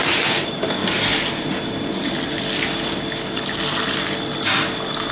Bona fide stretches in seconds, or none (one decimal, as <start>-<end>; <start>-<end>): 0.0-5.1